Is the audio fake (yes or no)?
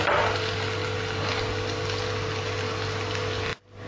no